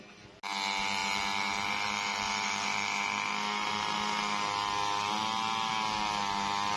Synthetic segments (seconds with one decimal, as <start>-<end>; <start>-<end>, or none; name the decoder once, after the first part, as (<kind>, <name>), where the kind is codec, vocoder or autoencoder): none